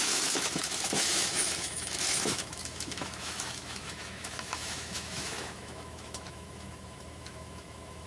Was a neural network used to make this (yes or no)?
yes